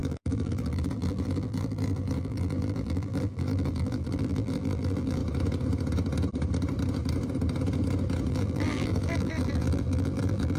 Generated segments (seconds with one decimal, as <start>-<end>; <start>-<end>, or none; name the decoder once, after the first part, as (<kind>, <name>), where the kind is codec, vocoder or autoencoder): 0.0-5.2 (vocoder, BigVGAN v2); 8.3-10.6